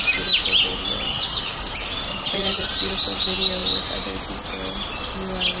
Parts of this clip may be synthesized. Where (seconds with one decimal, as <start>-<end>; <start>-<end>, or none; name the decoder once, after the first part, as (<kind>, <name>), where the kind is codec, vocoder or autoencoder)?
1.1-1.6 (vocoder, HiFi-GAN); 2.1-2.7